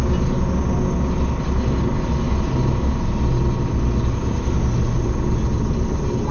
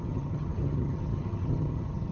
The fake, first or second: second